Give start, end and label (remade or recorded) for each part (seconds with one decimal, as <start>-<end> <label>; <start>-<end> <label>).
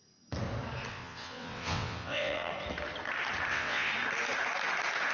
0.0-0.9 recorded; 0.9-2.5 remade; 2.5-3.5 recorded; 3.5-3.9 remade; 3.9-5.1 recorded